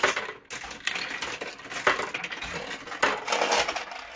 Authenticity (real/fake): real